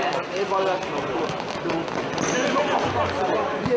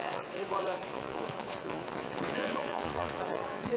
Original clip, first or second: first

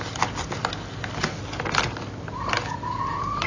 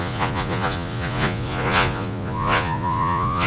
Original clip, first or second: first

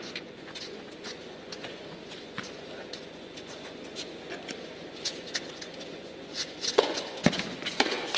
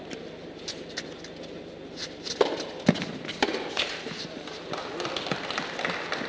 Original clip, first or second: second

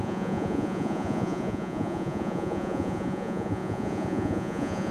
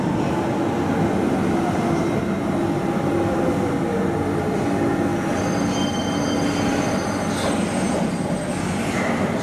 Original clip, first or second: second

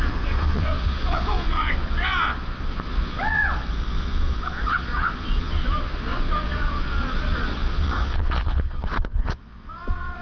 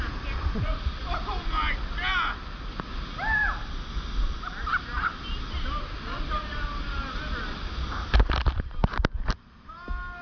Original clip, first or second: second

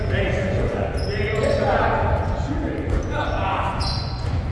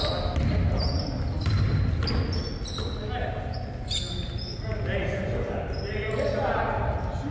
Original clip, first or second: second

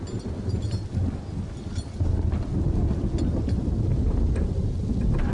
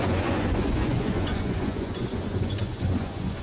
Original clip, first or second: first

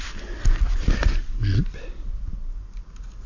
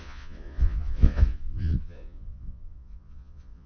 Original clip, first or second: first